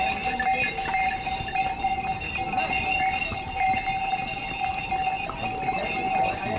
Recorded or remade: recorded